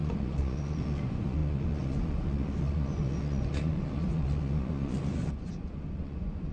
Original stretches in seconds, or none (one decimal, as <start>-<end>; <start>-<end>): none